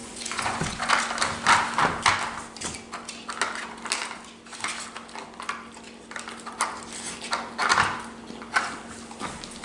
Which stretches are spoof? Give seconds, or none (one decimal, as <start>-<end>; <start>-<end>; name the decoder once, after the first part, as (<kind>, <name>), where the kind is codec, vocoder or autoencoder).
0.0-0.9 (vocoder, Vocos)